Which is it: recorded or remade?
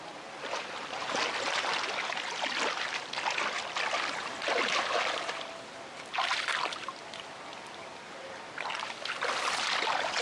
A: recorded